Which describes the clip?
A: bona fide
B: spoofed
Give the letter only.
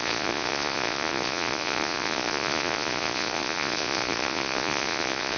B